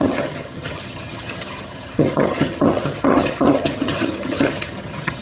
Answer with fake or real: fake